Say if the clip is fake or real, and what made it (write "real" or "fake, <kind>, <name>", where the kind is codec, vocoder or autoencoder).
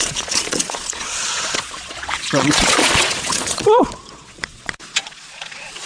fake, vocoder, Vocos